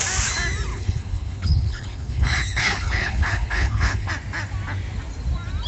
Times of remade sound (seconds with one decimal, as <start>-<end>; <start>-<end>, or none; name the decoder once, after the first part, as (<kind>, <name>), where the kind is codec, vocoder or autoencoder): 0.7-4.1 (codec, HILCodec)